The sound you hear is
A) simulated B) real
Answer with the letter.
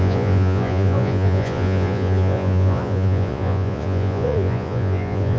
A